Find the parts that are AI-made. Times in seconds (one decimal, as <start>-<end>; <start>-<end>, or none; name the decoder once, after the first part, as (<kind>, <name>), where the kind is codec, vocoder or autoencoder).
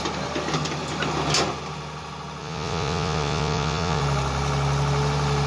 2.4-4.0 (vocoder, Vocos)